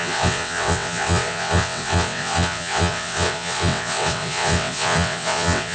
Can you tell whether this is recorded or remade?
remade